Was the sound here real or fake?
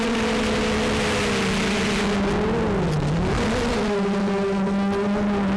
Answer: real